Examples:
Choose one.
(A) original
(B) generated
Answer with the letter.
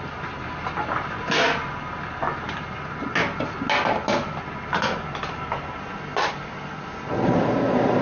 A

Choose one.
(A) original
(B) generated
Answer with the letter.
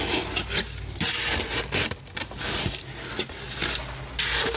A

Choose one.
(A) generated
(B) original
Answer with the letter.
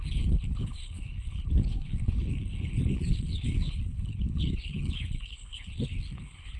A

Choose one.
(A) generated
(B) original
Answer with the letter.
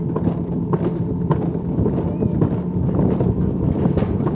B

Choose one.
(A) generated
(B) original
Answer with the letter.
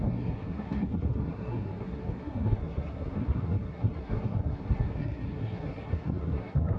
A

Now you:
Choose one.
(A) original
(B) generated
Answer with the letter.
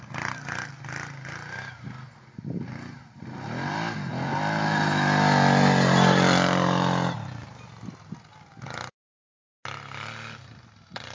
A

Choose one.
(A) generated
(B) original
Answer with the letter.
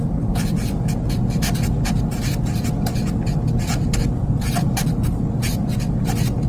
B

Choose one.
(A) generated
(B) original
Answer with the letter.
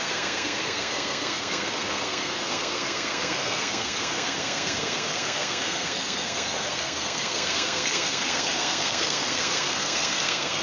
A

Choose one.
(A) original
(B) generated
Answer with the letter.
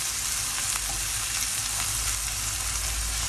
A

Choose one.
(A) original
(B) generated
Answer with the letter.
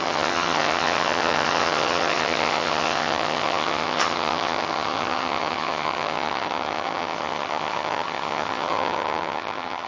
B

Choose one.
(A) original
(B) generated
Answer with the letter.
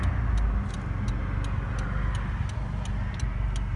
A